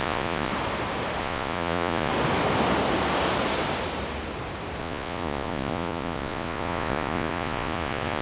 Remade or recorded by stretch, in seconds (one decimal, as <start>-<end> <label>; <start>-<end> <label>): 0.0-0.5 remade; 0.5-1.2 recorded; 1.2-2.1 remade; 2.1-4.8 recorded; 4.8-8.2 remade